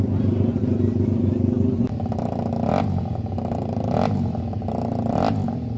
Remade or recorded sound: recorded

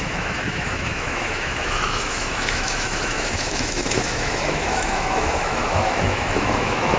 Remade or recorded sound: remade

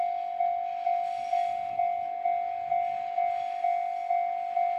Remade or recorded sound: recorded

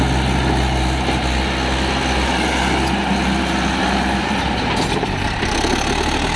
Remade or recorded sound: recorded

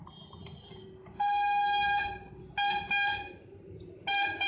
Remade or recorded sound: recorded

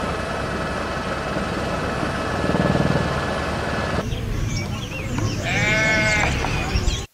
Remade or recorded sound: recorded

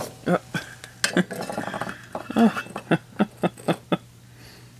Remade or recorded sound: recorded